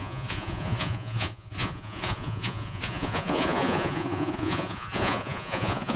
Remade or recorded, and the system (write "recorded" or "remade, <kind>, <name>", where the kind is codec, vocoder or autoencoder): remade, vocoder, Vocos